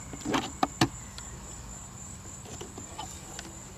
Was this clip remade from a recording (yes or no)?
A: no